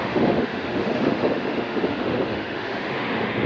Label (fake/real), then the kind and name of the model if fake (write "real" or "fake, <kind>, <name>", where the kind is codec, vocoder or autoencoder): fake, autoencoder, DAC-VAE